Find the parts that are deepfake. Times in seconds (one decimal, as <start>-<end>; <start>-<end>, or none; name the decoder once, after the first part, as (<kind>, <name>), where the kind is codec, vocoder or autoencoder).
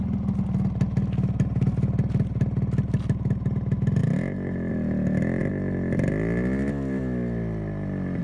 none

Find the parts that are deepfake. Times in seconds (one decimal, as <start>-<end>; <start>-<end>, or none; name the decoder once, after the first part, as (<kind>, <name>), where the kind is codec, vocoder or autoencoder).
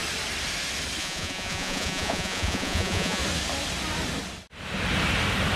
1.0-3.2 (vocoder, Vocos)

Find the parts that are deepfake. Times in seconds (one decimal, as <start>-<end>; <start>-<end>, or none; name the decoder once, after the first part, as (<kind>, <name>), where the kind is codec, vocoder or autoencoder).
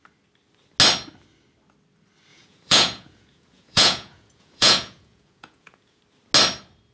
2.3-6.0 (vocoder, Vocos)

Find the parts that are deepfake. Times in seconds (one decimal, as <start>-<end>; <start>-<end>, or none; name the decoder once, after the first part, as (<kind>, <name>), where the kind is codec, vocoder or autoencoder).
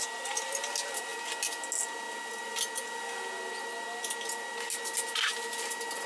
none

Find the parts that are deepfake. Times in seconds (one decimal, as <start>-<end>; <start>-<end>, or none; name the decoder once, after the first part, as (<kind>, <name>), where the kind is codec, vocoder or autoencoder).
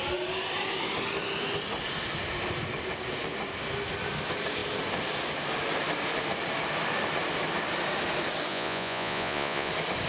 8.5-9.7 (vocoder, Vocos)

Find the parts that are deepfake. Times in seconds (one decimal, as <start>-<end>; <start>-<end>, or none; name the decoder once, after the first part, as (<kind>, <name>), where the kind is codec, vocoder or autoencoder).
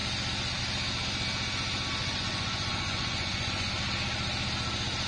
2.0-3.7 (vocoder, Vocos)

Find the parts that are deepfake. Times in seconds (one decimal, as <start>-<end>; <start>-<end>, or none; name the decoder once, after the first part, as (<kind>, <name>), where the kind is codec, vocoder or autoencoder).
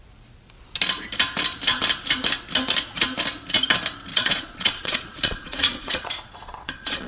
4.1-7.1 (vocoder, Vocos)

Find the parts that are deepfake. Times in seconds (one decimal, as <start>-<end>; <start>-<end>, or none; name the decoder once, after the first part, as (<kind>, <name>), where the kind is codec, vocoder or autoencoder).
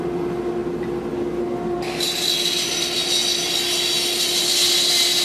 none